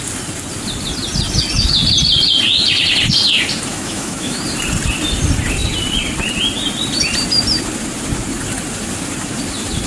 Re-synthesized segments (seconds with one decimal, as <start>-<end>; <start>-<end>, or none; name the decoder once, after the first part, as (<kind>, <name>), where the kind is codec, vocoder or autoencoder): 3.7-4.4 (autoencoder, DAC-VAE)